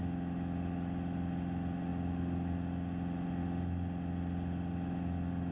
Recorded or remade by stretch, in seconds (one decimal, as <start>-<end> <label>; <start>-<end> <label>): 0.0-5.5 recorded